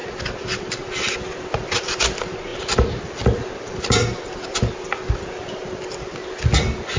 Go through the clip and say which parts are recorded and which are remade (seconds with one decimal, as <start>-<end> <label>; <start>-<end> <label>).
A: 0.0-7.0 recorded